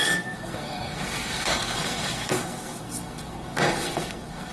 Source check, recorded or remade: remade